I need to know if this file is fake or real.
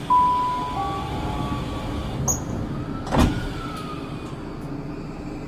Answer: real